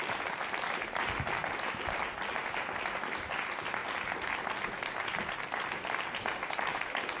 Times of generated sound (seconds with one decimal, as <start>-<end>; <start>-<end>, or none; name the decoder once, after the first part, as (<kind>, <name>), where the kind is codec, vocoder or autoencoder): none